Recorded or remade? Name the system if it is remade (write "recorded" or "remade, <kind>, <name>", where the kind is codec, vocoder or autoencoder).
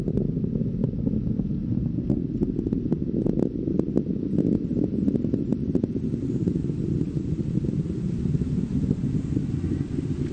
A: recorded